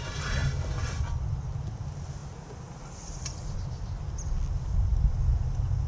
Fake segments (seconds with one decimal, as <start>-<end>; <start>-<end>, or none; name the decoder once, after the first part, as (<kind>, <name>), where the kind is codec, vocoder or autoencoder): none